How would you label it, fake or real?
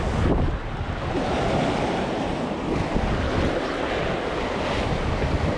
real